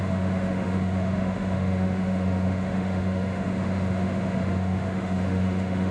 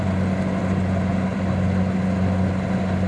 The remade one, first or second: first